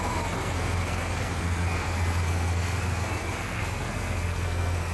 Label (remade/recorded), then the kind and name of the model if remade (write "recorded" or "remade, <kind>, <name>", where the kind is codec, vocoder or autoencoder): remade, codec, SNAC